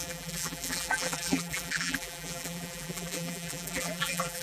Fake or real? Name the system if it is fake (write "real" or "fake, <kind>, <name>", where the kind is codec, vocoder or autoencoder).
fake, vocoder, BigVGAN v2